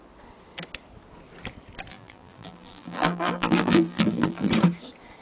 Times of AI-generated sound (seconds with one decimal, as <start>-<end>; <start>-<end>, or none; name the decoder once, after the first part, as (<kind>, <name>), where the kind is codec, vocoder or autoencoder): 1.9-4.5 (vocoder, BigVGAN v2)